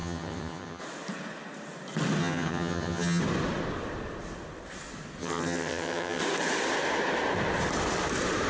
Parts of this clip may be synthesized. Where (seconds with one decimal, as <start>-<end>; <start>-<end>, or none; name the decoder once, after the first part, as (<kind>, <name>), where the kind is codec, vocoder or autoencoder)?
0.0-0.8 (vocoder, HiFi-GAN); 2.2-3.2; 5.2-6.2